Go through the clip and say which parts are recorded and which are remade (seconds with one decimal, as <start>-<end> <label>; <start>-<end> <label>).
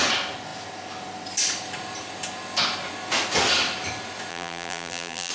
0.0-4.3 recorded; 4.3-5.3 remade